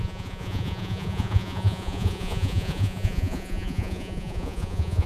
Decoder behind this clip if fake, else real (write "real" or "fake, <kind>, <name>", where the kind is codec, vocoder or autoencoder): fake, vocoder, Vocos